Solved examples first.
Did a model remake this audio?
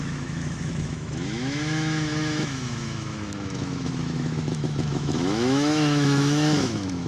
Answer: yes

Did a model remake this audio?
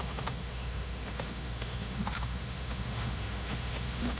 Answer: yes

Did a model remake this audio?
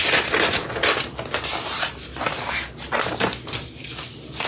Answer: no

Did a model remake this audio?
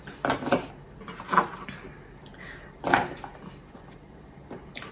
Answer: no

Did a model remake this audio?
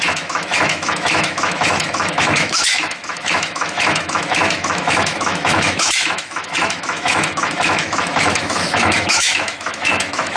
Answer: yes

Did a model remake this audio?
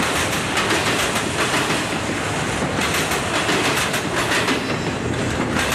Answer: no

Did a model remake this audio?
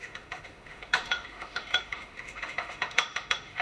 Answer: yes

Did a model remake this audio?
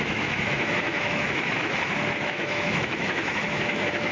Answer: yes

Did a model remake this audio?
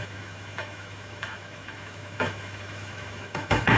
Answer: yes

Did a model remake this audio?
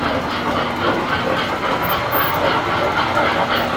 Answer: no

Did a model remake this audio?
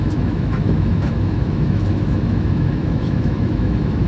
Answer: yes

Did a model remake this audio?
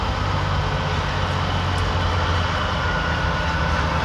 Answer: no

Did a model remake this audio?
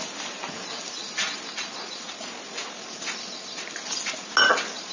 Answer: no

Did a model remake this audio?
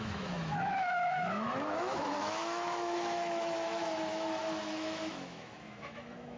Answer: yes